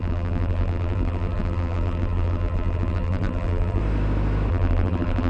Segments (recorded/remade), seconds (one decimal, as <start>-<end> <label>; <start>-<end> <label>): 0.0-3.8 remade; 3.8-4.5 recorded; 4.5-5.3 remade